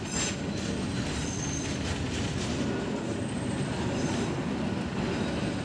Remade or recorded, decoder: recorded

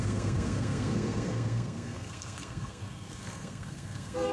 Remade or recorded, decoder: remade, codec, SNAC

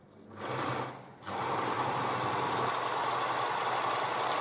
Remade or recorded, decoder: recorded